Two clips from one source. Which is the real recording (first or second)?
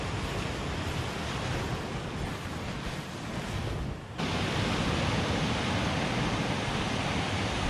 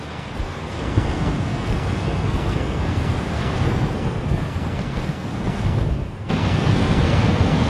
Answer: first